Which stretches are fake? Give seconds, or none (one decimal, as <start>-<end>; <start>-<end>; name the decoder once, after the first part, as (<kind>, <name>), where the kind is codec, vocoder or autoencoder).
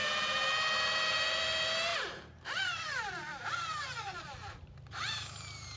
1.9-5.8 (vocoder, BigVGAN v2)